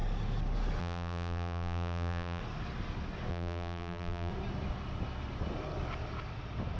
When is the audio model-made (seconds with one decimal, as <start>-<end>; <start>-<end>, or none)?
0.8-2.4; 3.3-4.3